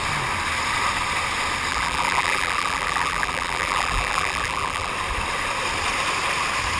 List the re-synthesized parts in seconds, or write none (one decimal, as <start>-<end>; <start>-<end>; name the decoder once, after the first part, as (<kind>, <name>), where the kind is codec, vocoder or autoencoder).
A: 1.7-4.9 (vocoder, BigVGAN v2)

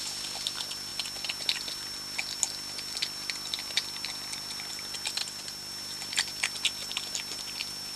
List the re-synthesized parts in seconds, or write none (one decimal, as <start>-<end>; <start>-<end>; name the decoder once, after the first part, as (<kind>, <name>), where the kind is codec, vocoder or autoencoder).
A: 5.2-5.7 (vocoder, BigVGAN v2)

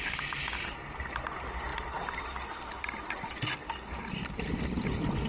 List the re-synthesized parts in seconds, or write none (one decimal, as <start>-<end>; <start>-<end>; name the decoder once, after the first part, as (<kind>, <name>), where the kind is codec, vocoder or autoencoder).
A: 4.0-4.6 (vocoder, BigVGAN v2)

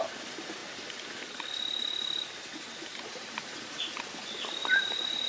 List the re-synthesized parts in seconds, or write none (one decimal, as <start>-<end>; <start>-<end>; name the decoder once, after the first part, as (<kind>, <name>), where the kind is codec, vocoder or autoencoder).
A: 2.5-3.8 (vocoder, BigVGAN v2); 4.6-5.3

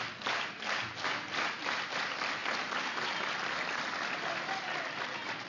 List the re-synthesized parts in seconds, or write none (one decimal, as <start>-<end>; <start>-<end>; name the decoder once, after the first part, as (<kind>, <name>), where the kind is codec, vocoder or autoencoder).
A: none